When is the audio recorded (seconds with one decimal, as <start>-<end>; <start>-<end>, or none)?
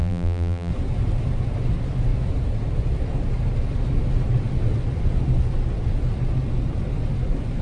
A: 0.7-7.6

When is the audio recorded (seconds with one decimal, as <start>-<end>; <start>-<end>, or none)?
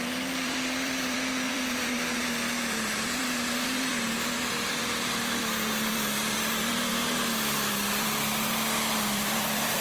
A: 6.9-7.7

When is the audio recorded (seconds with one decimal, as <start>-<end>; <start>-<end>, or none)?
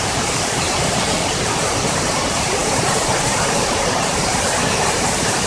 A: none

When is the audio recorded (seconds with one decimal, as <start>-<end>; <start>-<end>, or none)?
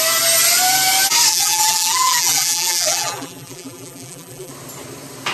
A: 0.0-1.3; 4.5-5.3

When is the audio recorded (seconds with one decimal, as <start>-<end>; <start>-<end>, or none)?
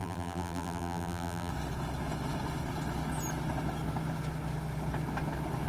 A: 1.5-5.7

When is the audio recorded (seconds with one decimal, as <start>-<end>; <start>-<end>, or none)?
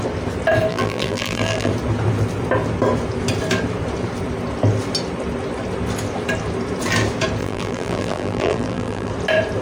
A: 0.0-0.7; 1.7-7.4; 9.1-9.6